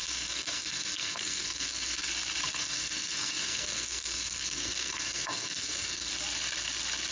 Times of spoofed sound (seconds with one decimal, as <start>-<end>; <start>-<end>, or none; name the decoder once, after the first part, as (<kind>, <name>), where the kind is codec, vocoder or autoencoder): 0.0-2.1 (codec, SNAC); 2.6-6.1